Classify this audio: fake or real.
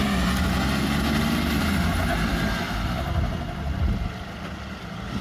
real